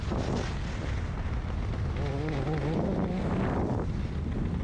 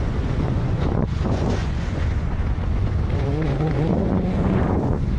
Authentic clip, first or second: first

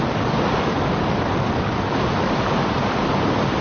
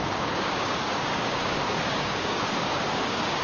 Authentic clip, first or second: first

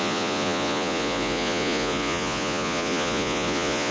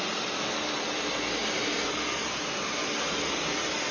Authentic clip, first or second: second